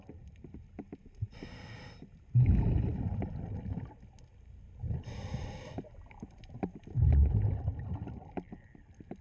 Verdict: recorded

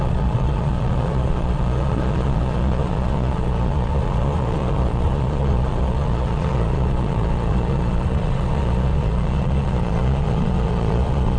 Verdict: remade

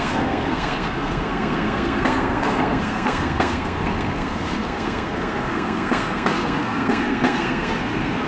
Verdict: remade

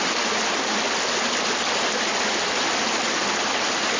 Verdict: recorded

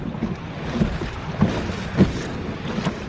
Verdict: recorded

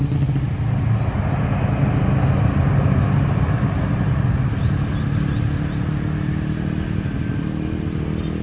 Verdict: recorded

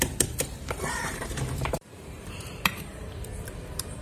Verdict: remade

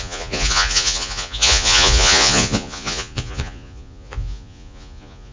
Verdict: remade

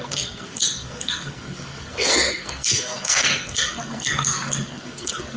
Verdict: remade